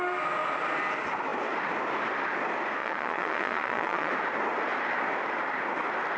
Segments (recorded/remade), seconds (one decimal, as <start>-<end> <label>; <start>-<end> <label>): 0.0-2.8 recorded; 2.8-4.1 remade; 4.1-6.2 recorded